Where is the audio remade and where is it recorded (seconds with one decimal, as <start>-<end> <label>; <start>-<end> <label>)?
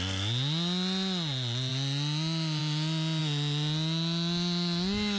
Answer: 0.0-5.2 recorded